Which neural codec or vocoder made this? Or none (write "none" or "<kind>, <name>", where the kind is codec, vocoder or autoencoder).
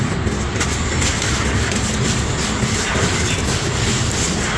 none